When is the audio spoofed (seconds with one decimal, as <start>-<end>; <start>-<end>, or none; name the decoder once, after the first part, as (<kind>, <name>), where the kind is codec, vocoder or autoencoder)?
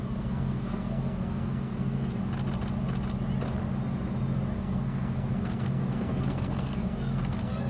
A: 0.0-2.2 (codec, SNAC); 4.6-7.7